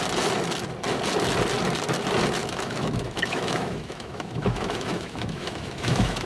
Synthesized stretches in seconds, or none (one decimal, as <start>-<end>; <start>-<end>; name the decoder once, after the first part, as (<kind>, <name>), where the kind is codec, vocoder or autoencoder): 2.4-6.3 (autoencoder, DAC-VAE)